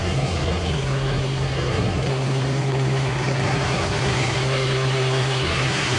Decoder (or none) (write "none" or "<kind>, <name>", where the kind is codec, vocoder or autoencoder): codec, SNAC